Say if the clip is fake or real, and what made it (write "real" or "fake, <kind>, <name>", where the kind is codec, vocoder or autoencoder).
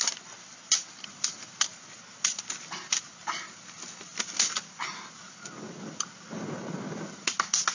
real